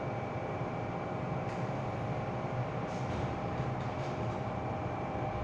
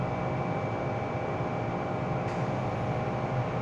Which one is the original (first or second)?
second